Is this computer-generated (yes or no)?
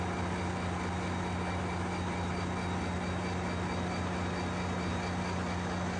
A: no